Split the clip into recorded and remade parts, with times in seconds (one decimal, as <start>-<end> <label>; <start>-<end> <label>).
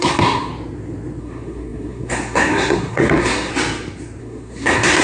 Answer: 0.0-0.5 remade; 0.5-1.2 recorded; 1.2-3.5 remade; 3.5-4.2 recorded; 4.2-5.0 remade